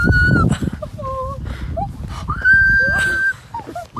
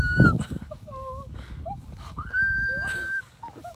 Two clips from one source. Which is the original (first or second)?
first